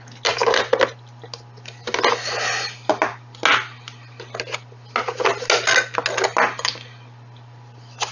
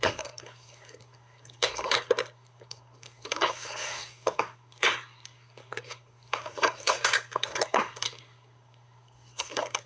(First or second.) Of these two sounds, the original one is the first